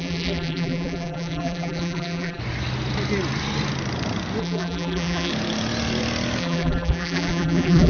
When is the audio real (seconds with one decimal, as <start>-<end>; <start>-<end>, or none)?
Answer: 2.4-4.4; 5.3-6.4